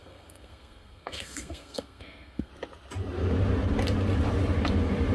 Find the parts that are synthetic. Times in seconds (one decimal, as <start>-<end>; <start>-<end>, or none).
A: 0.0-2.5